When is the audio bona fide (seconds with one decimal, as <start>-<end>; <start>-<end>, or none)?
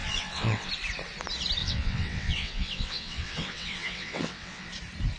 0.7-1.6; 4.7-5.2